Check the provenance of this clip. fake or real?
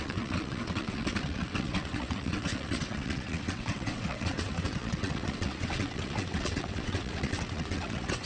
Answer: fake